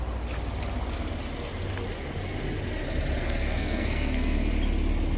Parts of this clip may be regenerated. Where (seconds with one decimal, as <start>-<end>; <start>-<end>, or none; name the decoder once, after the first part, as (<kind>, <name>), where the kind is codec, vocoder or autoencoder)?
3.2-4.5 (codec, SNAC)

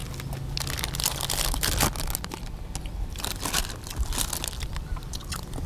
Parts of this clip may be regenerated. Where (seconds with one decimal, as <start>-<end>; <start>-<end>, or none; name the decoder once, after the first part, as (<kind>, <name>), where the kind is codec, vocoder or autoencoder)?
none

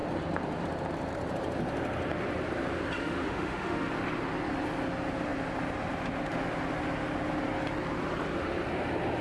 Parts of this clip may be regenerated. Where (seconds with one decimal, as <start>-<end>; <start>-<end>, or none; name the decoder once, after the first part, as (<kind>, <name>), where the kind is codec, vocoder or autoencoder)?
3.0-3.9 (autoencoder, DAC-VAE)

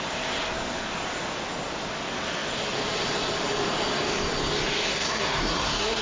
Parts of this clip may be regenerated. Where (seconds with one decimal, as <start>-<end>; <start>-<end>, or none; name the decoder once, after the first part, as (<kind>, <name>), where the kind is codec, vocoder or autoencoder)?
4.9-6.0 (codec, SNAC)

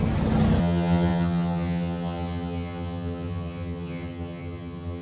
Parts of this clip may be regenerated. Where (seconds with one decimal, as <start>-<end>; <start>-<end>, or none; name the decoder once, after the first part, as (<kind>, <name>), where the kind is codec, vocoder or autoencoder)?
0.6-5.0 (vocoder, HiFi-GAN)